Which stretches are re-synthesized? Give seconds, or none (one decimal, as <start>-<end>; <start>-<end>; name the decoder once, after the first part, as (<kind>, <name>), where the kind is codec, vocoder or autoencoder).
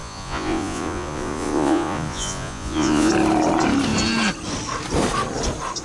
0.0-3.1 (vocoder, Vocos)